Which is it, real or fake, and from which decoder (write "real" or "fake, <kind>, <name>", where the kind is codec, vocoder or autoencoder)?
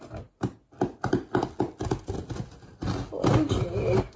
real